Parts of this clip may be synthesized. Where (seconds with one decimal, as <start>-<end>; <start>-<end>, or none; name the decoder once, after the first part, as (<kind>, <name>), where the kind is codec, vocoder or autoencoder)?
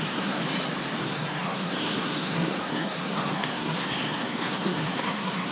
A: 0.0-0.4 (codec, SNAC); 1.0-5.5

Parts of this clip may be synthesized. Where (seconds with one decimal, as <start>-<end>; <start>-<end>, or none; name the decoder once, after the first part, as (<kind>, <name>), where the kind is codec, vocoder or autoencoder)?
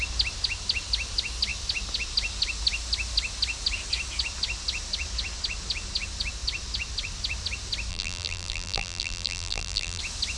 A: 7.9-10.0 (vocoder, BigVGAN v2)